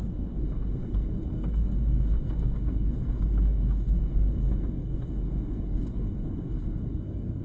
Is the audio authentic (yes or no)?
no